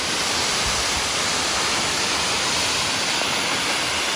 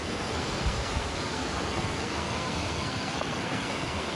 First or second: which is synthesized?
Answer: second